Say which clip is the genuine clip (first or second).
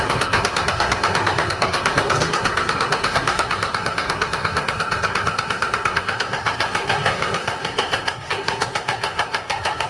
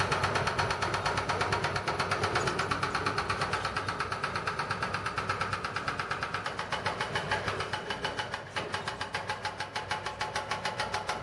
second